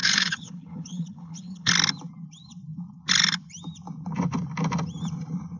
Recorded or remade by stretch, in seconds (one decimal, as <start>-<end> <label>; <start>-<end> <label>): 0.0-1.7 remade; 1.7-5.6 recorded